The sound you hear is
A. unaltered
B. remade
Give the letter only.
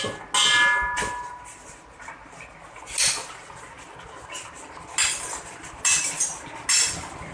A